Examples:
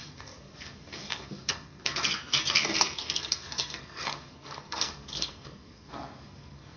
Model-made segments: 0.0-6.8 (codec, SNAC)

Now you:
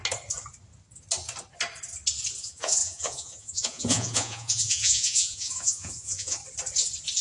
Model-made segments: 2.4-6.4 (vocoder, Vocos)

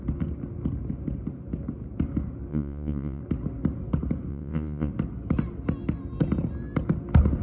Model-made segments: 2.5-3.2 (vocoder, Vocos); 4.3-4.9

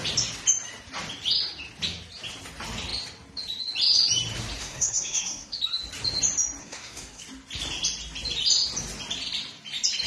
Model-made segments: 4.6-5.6 (codec, SNAC); 6.6-7.2

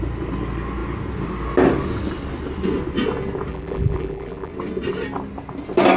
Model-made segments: 3.5-4.5 (vocoder, BigVGAN v2)